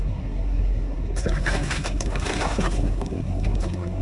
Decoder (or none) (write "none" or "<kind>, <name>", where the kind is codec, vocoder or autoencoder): codec, SNAC